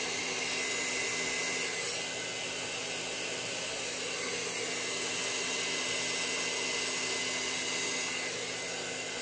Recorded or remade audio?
recorded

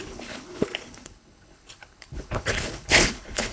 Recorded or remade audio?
remade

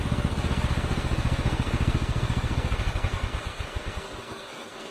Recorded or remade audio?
remade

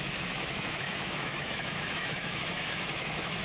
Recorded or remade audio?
remade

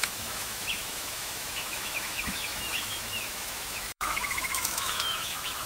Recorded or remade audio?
remade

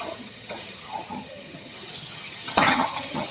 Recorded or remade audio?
remade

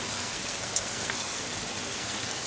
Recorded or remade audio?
remade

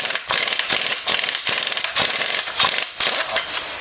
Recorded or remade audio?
recorded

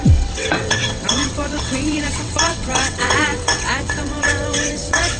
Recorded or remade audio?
remade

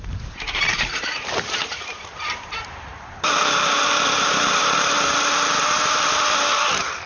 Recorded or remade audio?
remade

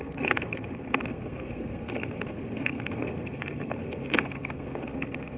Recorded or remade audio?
remade